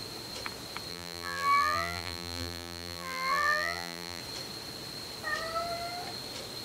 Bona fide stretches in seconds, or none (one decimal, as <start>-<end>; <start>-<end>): 0.0-0.9; 4.2-6.6